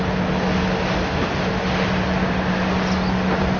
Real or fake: real